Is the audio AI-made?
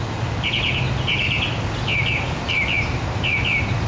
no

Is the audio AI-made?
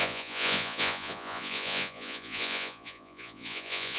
yes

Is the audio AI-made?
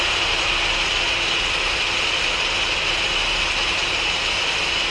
no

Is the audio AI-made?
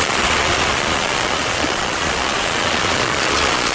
yes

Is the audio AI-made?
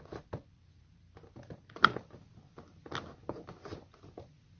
no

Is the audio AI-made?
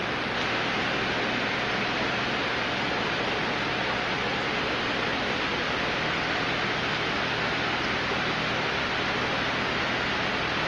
no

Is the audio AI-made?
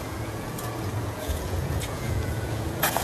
yes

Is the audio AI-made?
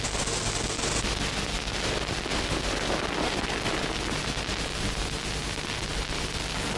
no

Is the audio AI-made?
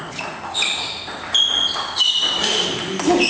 no